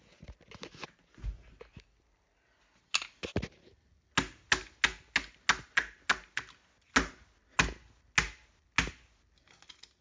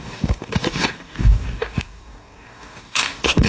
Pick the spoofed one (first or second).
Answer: second